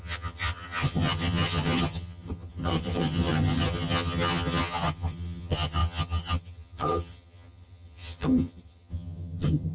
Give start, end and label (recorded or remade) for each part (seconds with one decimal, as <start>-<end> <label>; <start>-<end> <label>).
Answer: 0.0-9.7 remade

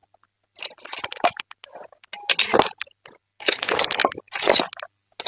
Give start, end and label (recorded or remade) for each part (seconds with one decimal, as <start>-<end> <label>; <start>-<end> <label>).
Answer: 0.0-5.3 recorded

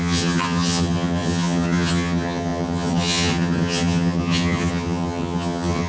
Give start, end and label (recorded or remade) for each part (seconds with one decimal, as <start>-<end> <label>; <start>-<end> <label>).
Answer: 0.0-5.9 remade

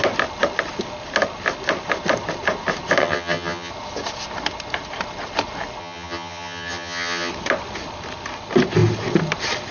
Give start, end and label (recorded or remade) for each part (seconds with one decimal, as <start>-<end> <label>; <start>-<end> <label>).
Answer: 0.0-3.0 recorded; 3.0-3.7 remade; 3.7-5.8 recorded; 5.8-7.3 remade; 7.3-9.7 recorded

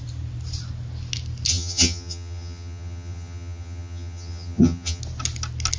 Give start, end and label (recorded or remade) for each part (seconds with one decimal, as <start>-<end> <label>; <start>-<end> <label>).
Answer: 0.0-1.5 recorded; 1.5-5.0 remade; 5.0-5.8 recorded

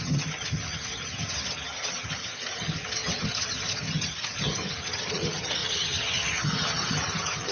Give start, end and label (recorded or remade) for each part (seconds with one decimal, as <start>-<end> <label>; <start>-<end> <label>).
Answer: 0.0-7.5 remade

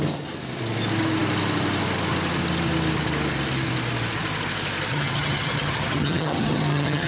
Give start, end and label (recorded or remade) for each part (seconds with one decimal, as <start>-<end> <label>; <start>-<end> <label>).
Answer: 0.0-4.9 recorded; 4.9-7.1 remade

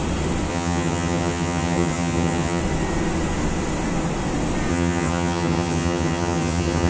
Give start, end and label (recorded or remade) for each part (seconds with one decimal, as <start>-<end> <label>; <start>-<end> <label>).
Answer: 0.0-0.5 recorded; 0.5-2.6 remade; 2.6-4.7 recorded; 4.7-6.9 remade